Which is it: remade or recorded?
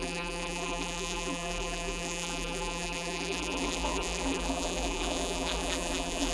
remade